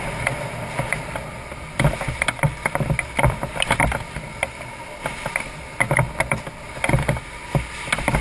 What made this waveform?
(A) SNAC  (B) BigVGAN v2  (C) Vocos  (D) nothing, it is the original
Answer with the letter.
D